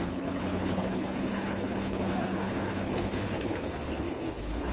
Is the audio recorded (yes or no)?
no